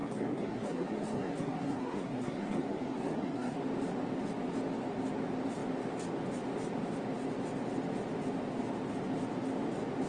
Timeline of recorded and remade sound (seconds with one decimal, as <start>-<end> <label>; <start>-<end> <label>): 0.0-3.6 remade; 3.6-10.1 recorded